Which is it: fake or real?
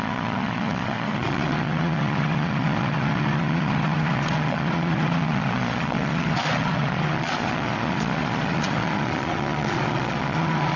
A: fake